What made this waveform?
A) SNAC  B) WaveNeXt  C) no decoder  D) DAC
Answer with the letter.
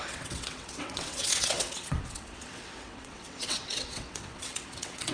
B